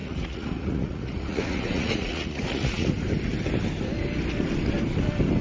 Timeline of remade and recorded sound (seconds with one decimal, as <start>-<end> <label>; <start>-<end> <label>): 0.0-2.9 remade; 2.9-5.4 recorded

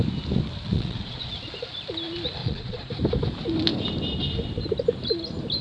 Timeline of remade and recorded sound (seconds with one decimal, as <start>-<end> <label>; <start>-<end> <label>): 0.0-0.7 recorded; 0.7-1.3 remade; 1.3-2.4 recorded; 2.4-2.9 remade; 2.9-5.6 recorded

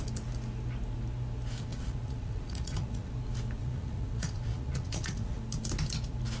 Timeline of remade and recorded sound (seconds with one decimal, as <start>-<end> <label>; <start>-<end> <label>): 0.0-1.7 recorded; 1.7-3.1 remade; 3.1-3.6 recorded; 3.6-5.4 remade; 5.4-6.4 recorded

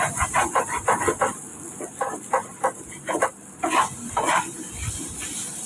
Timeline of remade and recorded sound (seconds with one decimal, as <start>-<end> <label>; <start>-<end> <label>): 0.0-5.7 recorded

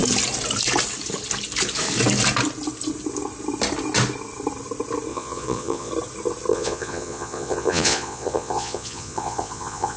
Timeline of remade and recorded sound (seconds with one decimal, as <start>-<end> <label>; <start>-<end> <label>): 0.0-5.1 recorded; 5.1-5.9 remade; 5.9-6.5 recorded; 6.5-10.0 remade

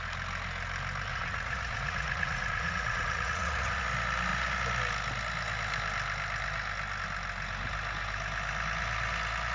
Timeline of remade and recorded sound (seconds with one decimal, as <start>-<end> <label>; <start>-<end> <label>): 0.0-1.1 recorded; 1.1-3.8 remade; 3.8-9.5 recorded

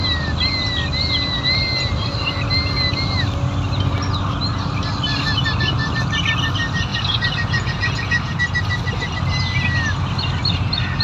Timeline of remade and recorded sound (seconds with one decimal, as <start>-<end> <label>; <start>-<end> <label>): 0.0-6.9 recorded; 6.9-8.4 remade; 8.4-11.0 recorded